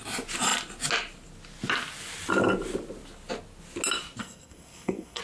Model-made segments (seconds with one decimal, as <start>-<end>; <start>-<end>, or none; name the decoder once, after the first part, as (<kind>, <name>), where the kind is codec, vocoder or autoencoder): 4.2-5.2 (codec, SNAC)